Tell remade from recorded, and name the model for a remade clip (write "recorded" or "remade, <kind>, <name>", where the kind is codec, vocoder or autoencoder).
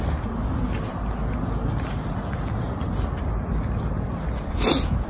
recorded